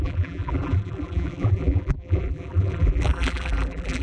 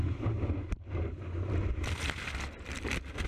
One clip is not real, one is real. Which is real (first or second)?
second